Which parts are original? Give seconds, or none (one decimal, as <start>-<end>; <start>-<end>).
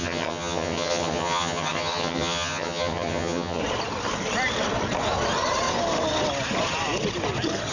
3.6-7.7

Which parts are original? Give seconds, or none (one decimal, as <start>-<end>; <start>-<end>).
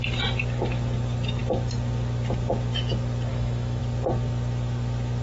0.0-3.3; 3.8-5.2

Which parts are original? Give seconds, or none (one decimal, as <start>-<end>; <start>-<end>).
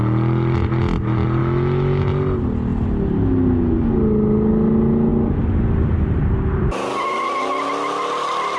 0.0-1.4; 2.0-8.6